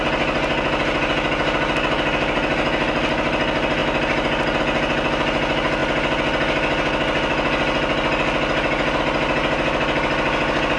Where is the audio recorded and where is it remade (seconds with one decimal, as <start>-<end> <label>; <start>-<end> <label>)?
0.0-10.8 recorded